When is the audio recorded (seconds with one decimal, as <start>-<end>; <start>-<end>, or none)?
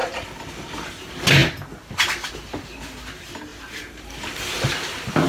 0.9-3.5; 4.7-5.3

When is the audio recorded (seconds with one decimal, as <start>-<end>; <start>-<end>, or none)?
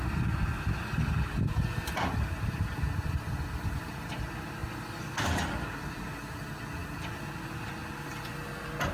0.0-8.9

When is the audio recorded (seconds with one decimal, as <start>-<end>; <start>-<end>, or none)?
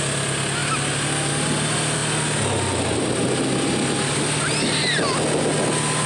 0.0-6.1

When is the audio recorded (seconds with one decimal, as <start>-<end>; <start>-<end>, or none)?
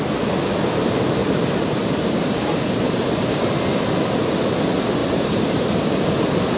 0.0-1.2; 3.1-5.0; 5.7-6.6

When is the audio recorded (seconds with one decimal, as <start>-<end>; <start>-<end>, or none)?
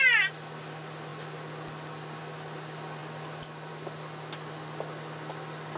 0.0-5.8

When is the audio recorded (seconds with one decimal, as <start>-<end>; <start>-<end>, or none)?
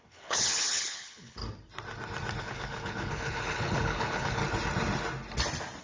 1.4-2.4; 4.4-5.8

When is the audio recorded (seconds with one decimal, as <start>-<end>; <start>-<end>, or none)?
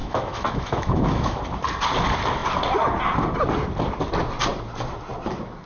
1.4-5.7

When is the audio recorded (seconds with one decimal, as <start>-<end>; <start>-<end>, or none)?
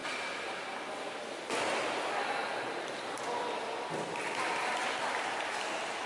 0.0-6.1